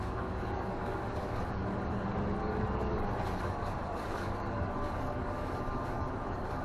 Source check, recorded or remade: remade